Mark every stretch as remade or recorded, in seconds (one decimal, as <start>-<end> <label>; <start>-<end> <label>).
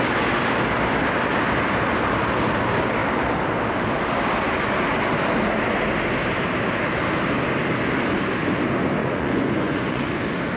0.0-9.0 recorded; 9.0-10.2 remade; 10.2-10.6 recorded